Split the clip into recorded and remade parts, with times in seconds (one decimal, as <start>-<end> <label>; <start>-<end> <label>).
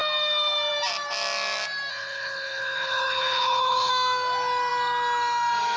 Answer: 0.0-1.9 recorded; 1.9-3.9 remade; 3.9-5.8 recorded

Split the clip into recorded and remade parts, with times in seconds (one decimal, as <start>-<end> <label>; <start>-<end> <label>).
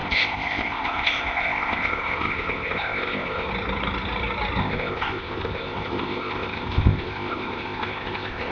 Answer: 0.0-3.5 remade; 3.5-4.6 recorded; 4.6-8.5 remade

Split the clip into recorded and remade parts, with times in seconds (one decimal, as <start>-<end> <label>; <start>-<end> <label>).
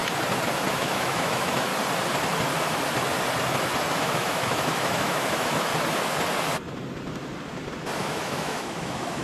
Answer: 0.0-0.7 recorded; 0.7-1.7 remade; 1.7-3.9 recorded; 3.9-5.7 remade; 5.7-8.0 recorded; 8.0-9.2 remade